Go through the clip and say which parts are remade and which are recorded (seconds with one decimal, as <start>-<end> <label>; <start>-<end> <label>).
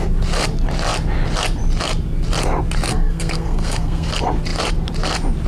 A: 0.0-2.9 recorded; 2.9-4.1 remade; 4.1-5.5 recorded